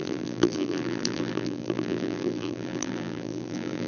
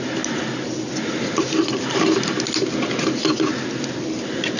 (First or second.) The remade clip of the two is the first